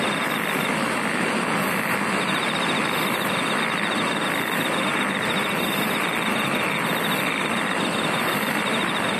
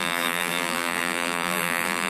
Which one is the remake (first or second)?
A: second